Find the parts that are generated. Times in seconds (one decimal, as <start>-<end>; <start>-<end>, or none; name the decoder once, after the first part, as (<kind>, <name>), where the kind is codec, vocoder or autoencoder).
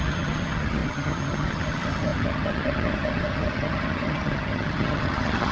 0.0-5.5 (vocoder, HiFi-GAN)